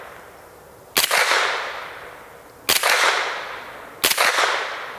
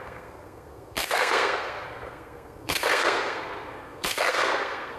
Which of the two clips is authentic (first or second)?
first